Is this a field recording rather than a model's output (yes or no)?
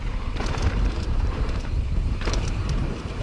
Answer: no